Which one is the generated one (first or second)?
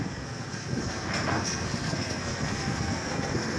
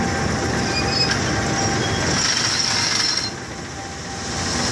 first